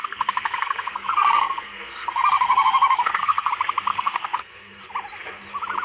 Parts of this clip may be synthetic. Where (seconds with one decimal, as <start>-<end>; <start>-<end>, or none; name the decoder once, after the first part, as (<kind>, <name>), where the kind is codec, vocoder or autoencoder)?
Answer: 0.0-3.5 (codec, SNAC); 3.9-4.8